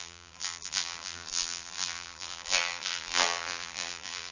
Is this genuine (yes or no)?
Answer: no